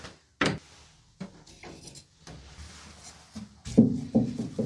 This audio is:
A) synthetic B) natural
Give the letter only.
B